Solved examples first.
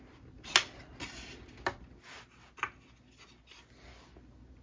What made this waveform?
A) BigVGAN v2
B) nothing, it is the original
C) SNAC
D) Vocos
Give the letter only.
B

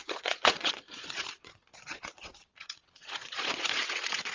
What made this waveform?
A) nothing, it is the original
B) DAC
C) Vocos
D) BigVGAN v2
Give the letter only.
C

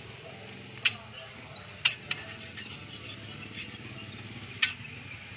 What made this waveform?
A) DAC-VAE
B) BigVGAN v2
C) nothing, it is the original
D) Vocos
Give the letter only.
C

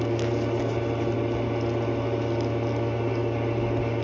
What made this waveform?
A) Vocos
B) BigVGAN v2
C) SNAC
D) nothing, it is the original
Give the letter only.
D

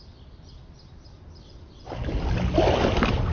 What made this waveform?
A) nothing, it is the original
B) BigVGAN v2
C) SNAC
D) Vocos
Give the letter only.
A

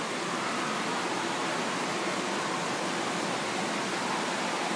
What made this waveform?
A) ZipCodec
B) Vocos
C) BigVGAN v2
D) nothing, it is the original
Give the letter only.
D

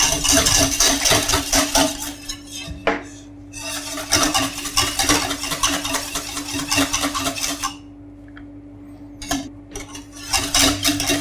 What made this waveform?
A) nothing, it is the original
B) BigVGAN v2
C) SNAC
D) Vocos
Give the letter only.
A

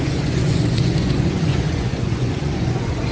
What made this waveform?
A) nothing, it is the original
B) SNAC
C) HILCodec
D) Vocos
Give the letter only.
D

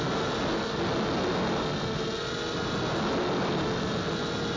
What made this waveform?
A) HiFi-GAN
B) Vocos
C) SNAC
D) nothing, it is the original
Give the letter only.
D